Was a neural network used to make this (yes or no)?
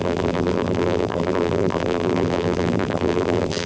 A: yes